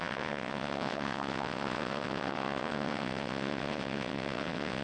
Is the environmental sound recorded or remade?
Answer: remade